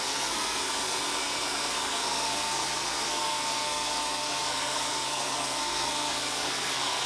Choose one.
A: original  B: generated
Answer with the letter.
B